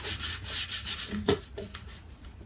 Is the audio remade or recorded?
remade